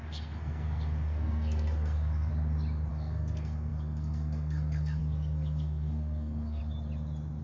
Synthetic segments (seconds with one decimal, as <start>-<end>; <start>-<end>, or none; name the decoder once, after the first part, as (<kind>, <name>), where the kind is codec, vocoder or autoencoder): 0.0-2.3 (codec, SNAC); 2.9-6.6